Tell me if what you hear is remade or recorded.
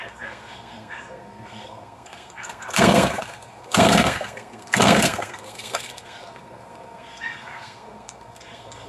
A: remade